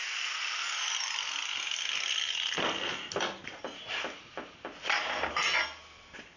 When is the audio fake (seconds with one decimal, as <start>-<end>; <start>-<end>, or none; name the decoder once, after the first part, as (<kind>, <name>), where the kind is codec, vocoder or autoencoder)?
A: none